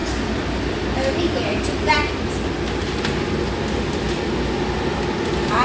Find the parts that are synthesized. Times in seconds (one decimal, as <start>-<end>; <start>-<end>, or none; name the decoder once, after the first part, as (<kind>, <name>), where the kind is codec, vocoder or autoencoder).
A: none